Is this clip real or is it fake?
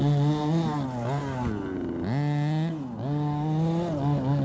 real